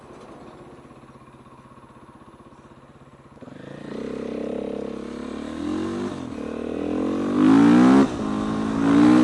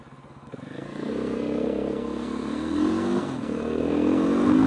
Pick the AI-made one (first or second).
second